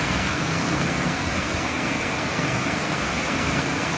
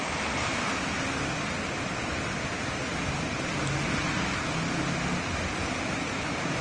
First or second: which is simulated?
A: first